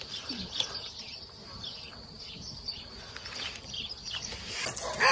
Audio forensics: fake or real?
real